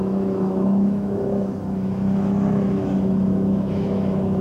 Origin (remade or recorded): remade